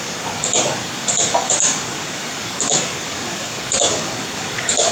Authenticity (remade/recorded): remade